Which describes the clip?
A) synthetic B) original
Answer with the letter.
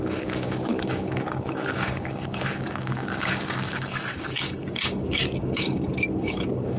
A